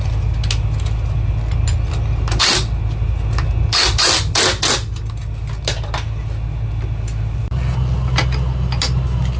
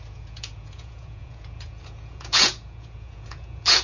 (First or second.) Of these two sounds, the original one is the first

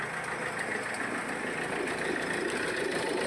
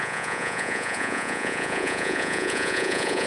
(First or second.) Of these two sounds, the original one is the first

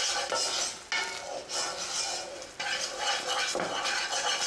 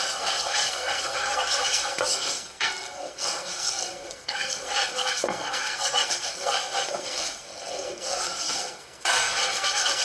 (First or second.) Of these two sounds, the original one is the first